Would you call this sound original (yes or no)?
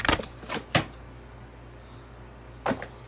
yes